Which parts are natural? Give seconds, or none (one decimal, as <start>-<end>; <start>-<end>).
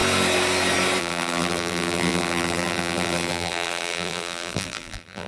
0.0-1.0